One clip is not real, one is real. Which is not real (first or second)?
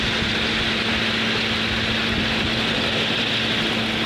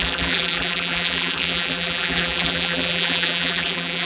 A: second